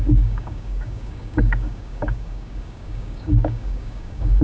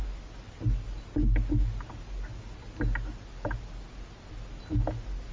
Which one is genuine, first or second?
second